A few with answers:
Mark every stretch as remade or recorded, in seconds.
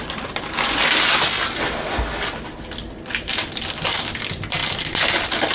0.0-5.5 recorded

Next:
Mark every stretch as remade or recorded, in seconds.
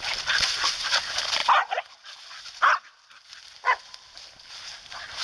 0.0-5.2 recorded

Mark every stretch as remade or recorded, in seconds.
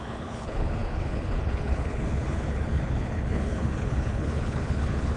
0.0-5.2 remade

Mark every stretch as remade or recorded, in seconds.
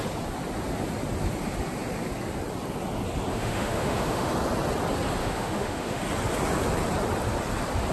0.0-3.3 recorded; 3.3-4.3 remade; 4.3-5.2 recorded; 5.2-6.0 remade; 6.0-7.9 recorded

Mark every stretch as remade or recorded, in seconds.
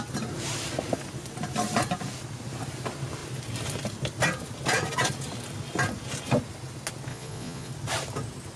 0.0-7.1 recorded; 7.1-7.7 remade; 7.7-8.6 recorded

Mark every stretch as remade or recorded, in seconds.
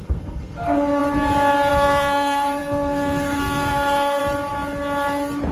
0.0-1.0 remade; 1.0-1.7 recorded; 1.7-4.2 remade; 4.2-5.5 recorded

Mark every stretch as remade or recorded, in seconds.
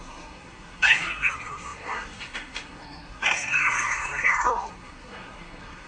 0.0-5.9 remade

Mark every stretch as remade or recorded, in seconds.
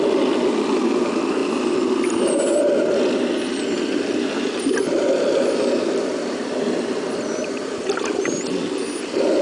0.0-9.4 recorded